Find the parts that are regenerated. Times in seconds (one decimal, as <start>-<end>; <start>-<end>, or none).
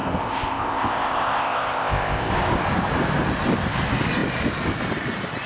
0.0-2.3